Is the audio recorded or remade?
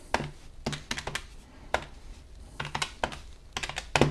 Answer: recorded